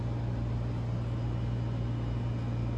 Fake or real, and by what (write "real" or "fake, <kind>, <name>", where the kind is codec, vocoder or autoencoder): real